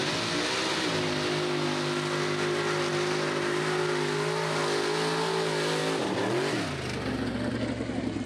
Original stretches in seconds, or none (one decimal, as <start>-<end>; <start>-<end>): 0.0-8.3